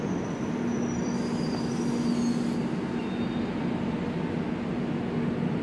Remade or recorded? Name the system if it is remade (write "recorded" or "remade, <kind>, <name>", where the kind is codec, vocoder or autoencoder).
recorded